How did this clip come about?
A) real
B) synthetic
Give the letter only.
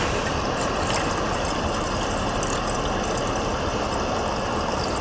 A